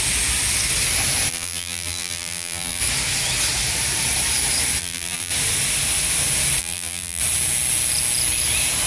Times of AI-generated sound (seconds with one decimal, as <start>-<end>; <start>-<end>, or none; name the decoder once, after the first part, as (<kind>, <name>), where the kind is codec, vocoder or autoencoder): 1.3-2.8 (vocoder, BigVGAN v2); 4.8-5.3; 6.6-7.2